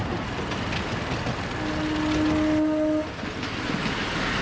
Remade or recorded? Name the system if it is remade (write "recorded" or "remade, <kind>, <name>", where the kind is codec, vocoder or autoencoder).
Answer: recorded